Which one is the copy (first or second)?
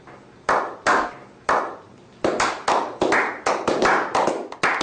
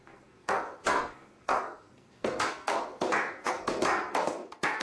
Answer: second